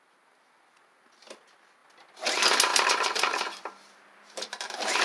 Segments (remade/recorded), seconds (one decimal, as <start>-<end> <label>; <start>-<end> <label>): 0.0-2.7 recorded; 2.7-5.0 remade